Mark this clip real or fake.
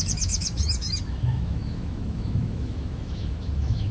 fake